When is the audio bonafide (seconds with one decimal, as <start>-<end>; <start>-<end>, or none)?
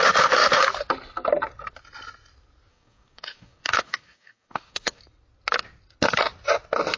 0.0-2.7; 5.0-7.0